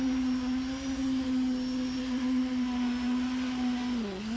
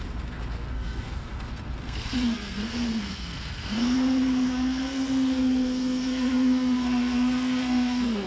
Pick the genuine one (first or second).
first